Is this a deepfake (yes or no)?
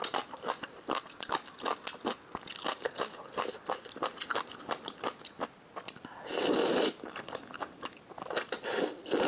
no